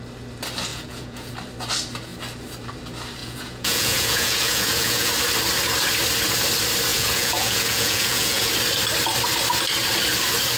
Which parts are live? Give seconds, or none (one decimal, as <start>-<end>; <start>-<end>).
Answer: 0.0-0.7; 1.3-3.2; 5.1-6.9; 8.5-10.6